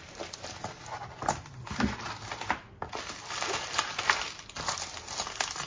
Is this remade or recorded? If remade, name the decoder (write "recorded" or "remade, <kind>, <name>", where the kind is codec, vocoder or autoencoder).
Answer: recorded